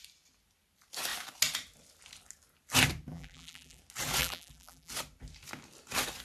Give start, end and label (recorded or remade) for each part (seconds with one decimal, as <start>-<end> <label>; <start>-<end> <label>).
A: 0.0-3.1 recorded; 3.1-3.8 remade; 3.8-4.2 recorded; 4.2-4.9 remade; 4.9-6.2 recorded